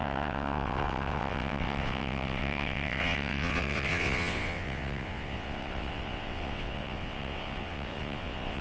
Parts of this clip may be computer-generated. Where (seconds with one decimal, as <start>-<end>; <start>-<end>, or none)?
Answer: 0.0-8.6